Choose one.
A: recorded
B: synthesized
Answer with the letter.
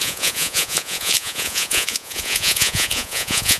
B